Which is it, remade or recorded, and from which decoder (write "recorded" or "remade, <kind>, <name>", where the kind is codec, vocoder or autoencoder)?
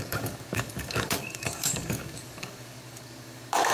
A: remade, codec, DAC